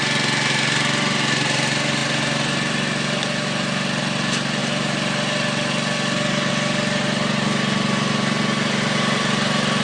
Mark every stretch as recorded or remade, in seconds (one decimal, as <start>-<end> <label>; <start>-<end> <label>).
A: 0.0-9.8 recorded